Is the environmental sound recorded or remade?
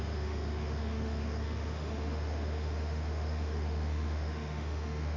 remade